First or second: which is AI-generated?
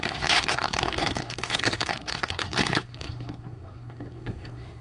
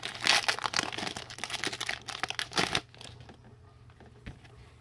first